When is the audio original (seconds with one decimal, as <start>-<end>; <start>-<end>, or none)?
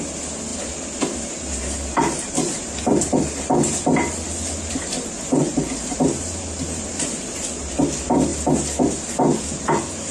0.0-1.5; 2.8-5.4; 7.7-10.1